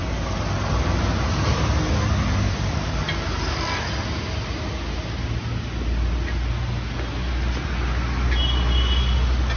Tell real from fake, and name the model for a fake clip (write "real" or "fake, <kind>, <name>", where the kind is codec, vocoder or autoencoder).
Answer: real